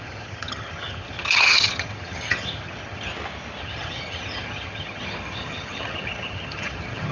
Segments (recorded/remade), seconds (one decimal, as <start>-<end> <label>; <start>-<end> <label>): 0.0-3.1 remade; 3.1-3.6 recorded; 3.6-7.1 remade